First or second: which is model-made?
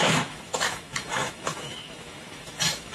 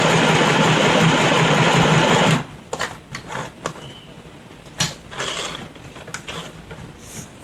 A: first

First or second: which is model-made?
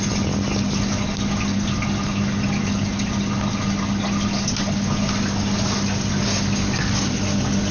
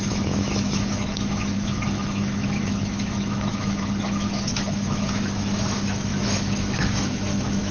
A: second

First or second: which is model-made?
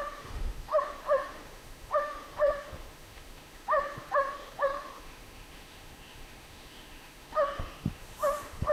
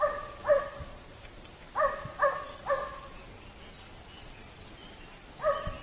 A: first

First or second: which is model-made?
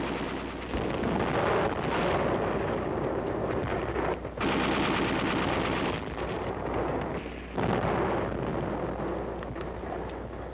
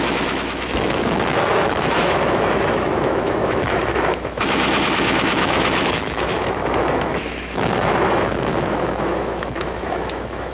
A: second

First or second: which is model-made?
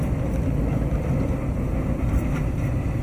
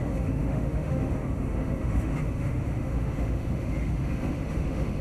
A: second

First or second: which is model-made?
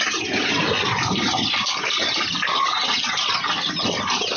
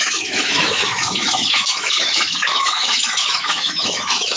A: second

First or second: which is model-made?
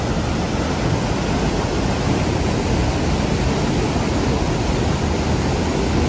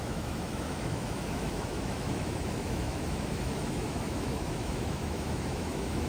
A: second